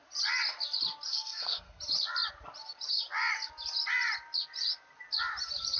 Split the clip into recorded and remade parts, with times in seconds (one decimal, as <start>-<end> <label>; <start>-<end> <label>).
0.0-1.1 recorded; 1.1-1.8 remade; 1.8-5.8 recorded